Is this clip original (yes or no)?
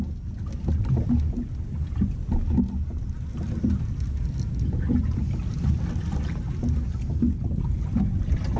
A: yes